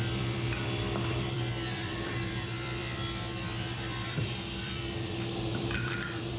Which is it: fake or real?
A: fake